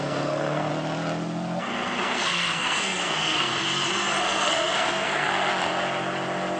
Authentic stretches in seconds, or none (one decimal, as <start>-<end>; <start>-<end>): 0.7-1.6; 3.5-4.2; 5.5-6.6